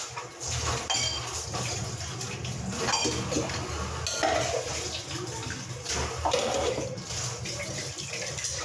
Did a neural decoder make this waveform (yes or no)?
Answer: no